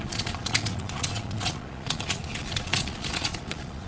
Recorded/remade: remade